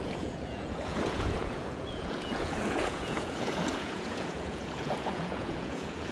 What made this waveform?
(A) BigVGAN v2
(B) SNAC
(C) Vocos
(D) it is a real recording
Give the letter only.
C